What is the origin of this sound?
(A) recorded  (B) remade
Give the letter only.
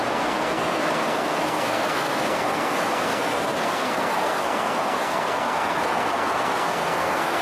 B